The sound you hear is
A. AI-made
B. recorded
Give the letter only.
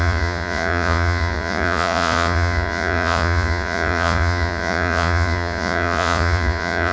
A